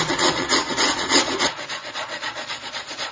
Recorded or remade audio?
remade